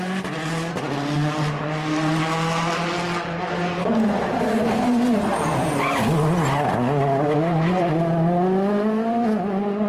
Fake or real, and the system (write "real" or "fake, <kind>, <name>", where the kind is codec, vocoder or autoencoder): real